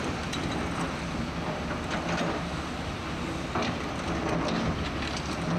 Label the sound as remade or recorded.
recorded